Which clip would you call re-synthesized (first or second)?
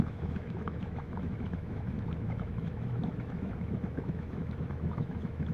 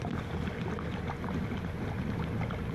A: first